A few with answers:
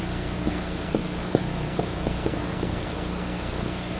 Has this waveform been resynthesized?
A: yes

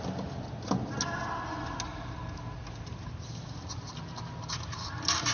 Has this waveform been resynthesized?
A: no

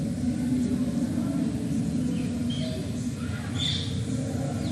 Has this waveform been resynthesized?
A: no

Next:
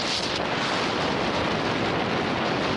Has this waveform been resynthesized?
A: no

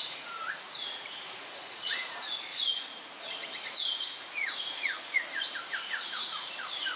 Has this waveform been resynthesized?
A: yes